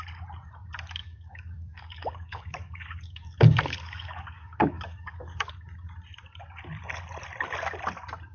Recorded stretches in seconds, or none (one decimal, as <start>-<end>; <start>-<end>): 0.0-1.0; 5.5-8.3